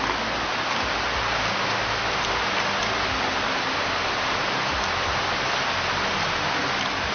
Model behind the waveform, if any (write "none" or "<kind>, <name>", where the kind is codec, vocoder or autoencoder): none